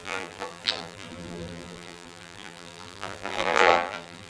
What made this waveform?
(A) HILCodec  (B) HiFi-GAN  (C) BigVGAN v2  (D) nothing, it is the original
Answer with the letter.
C